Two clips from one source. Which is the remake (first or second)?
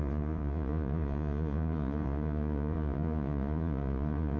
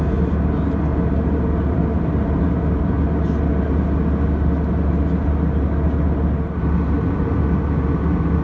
first